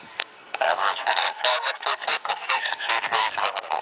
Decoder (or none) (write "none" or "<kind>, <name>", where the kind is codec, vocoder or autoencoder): codec, SNAC